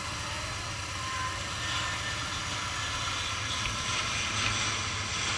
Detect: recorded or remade recorded